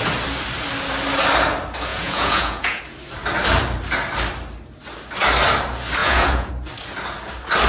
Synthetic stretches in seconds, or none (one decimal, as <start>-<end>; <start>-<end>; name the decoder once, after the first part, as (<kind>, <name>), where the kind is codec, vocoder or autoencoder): 1.9-2.8 (vocoder, Vocos); 6.0-6.5